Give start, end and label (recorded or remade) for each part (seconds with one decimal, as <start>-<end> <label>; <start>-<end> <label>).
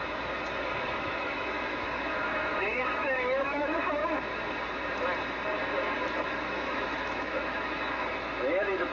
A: 0.0-4.0 remade; 4.0-6.1 recorded; 6.1-8.9 remade